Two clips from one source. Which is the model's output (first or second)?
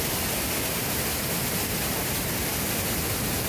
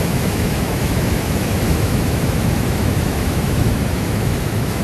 second